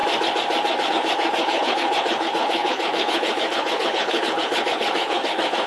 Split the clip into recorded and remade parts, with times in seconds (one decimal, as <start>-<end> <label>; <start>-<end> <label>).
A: 0.0-0.9 recorded; 0.9-5.7 remade